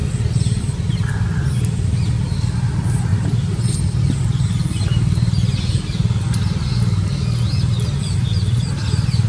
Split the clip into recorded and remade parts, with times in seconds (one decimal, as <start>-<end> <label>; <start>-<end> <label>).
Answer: 0.0-0.6 recorded; 0.6-3.1 remade; 3.1-8.0 recorded; 8.0-9.3 remade